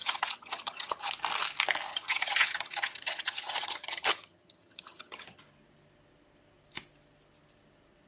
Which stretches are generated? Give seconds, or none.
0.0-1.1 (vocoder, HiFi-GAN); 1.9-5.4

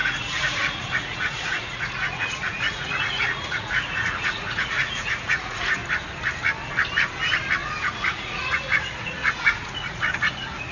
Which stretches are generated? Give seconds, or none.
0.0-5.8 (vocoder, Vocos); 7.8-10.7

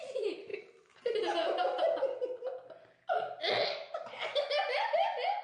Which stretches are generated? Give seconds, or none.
none

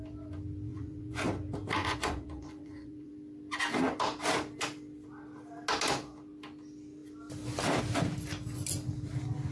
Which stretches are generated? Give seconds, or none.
0.7-1.3 (vocoder, Vocos); 1.8-3.1

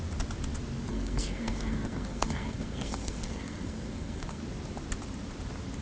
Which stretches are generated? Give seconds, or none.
0.9-4.4 (codec, SNAC)

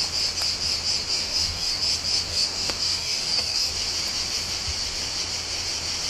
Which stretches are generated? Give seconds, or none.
1.1-1.8 (codec, DAC); 2.3-3.7

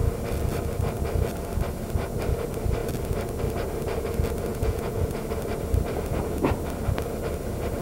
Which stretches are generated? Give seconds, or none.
4.5-5.2 (vocoder, Vocos)